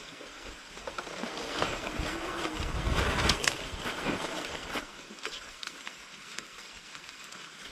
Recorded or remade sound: remade